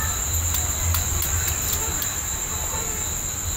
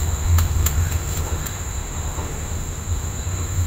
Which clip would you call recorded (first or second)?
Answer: first